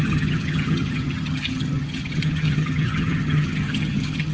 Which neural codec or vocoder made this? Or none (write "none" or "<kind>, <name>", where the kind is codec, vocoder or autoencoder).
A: vocoder, HiFi-GAN